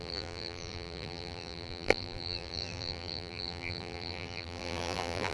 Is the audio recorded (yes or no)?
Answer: no